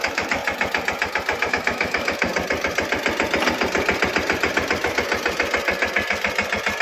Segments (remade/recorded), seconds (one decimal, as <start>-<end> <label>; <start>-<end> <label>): 0.0-0.4 remade; 0.4-1.5 recorded; 1.5-2.3 remade; 2.3-6.8 recorded